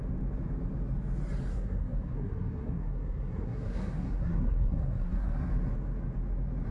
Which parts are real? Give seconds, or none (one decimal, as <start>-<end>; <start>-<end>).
0.0-1.5; 5.5-6.7

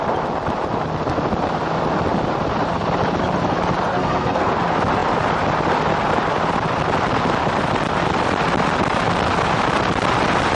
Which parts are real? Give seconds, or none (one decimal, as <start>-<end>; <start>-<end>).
0.0-3.9; 4.5-10.5